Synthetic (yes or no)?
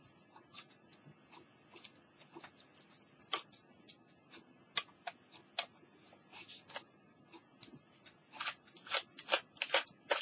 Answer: no